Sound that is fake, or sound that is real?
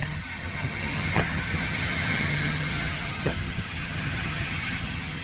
fake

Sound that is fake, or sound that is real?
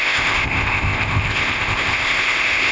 fake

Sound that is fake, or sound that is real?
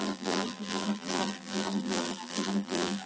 fake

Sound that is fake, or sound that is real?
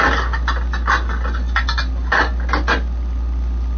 real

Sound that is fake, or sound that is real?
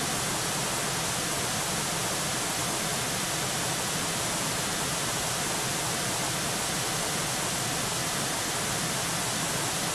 real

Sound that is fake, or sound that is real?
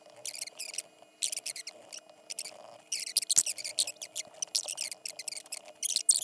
real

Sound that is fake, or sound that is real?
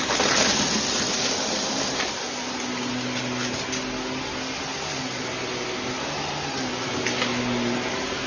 real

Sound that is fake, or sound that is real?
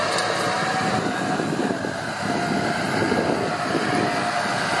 real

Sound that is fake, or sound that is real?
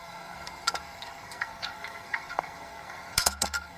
fake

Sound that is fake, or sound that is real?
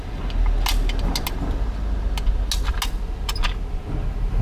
real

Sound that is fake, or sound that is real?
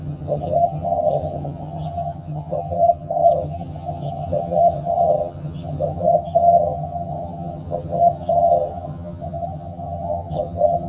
fake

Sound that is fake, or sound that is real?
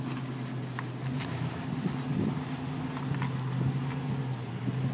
real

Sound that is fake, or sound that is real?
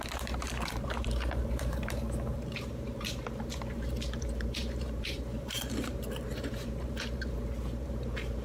fake